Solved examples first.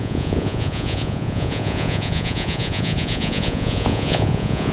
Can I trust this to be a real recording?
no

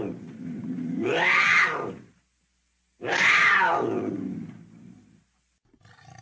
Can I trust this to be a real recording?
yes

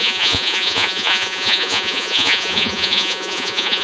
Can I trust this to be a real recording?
no